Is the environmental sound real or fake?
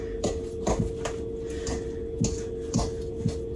real